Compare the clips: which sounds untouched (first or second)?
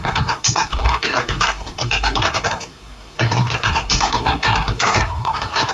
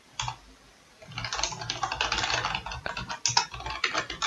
second